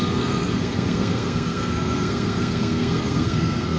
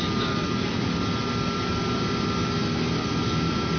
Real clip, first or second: second